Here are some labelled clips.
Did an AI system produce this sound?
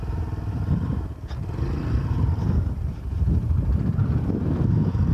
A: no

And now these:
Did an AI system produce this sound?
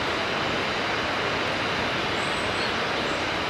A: no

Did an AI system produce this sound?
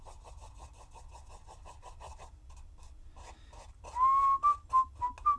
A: no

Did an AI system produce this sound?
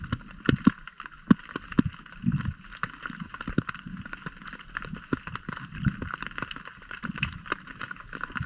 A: no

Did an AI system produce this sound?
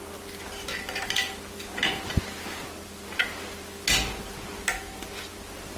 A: no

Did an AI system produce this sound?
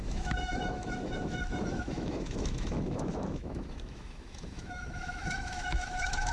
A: yes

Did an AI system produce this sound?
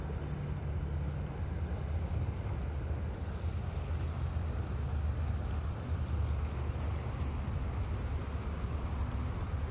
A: no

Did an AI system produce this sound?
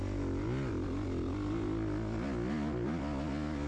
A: no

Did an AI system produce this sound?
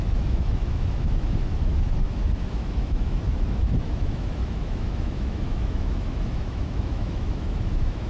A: yes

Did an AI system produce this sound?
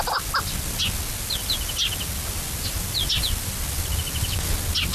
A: no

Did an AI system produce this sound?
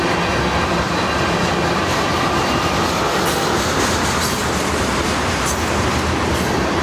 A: no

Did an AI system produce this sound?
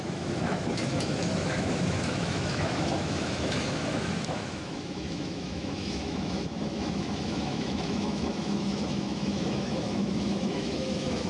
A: yes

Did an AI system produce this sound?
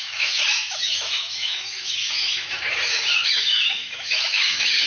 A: yes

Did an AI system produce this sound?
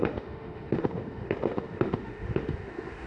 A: yes